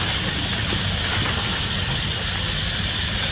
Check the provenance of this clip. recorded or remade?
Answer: recorded